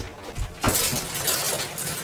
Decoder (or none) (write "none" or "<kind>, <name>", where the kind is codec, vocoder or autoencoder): none